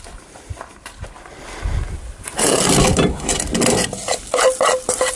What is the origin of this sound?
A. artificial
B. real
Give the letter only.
B